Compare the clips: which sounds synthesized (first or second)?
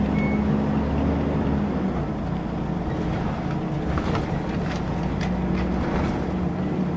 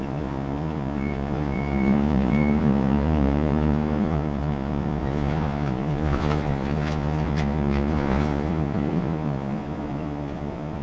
second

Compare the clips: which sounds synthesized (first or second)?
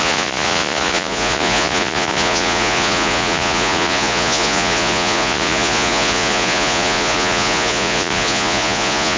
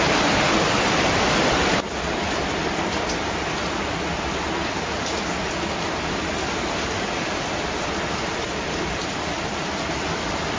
first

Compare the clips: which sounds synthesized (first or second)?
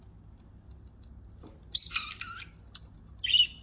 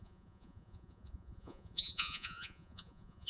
second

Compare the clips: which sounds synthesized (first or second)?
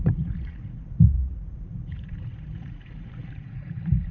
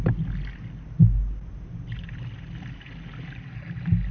first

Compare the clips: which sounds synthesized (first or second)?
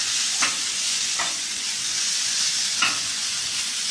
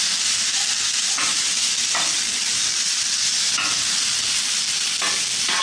first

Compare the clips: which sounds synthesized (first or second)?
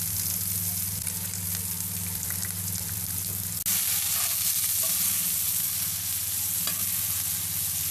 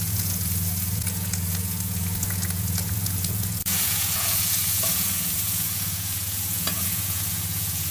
second